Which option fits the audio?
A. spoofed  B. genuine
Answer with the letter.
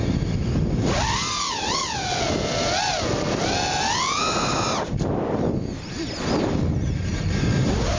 B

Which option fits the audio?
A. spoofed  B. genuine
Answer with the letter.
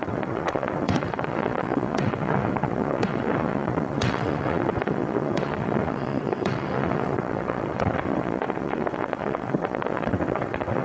A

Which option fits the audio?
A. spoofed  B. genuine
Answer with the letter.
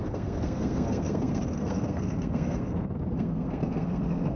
A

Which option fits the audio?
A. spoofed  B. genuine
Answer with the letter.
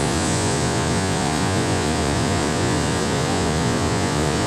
A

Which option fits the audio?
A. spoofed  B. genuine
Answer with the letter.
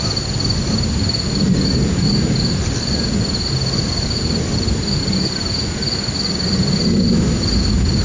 B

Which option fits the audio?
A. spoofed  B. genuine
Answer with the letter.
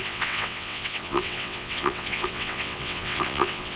A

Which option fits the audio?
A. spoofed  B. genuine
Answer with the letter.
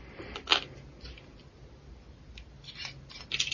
B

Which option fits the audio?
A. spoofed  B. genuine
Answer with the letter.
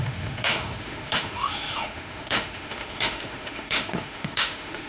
A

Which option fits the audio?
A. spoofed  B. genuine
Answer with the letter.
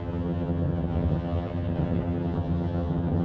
A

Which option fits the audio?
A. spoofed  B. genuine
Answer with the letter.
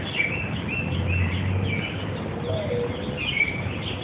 B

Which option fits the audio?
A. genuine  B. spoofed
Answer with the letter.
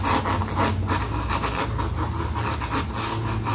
A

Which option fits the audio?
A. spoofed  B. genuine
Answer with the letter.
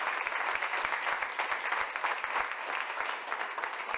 A